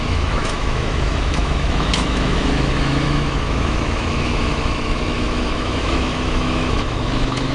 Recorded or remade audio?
remade